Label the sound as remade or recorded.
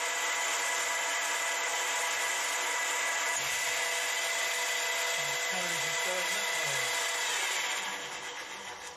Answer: recorded